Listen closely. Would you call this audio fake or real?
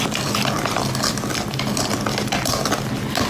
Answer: real